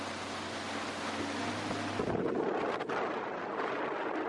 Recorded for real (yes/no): yes